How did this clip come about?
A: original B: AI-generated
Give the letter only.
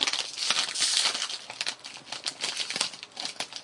A